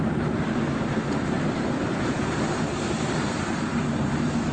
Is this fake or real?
fake